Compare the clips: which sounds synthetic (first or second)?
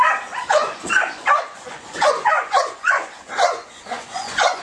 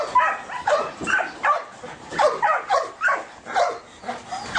first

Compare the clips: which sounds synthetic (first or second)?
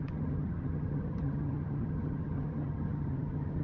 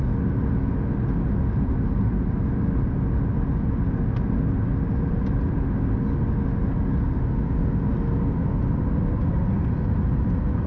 first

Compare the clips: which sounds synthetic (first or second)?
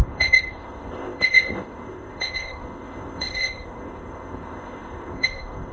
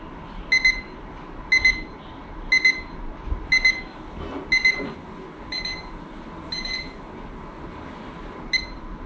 first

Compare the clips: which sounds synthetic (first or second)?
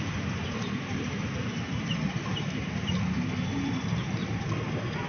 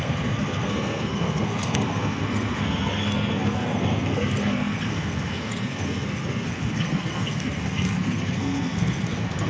second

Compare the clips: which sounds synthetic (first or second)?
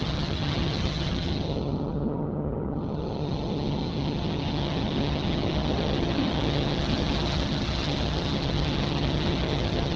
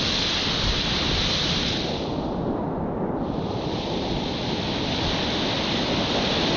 first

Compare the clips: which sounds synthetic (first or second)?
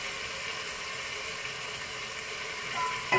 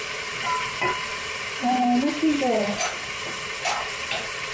second